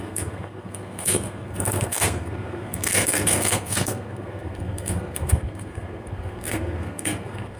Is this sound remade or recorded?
remade